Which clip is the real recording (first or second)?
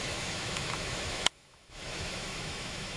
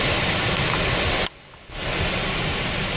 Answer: second